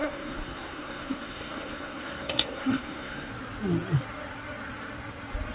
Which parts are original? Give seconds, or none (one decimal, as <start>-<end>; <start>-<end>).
3.3-5.5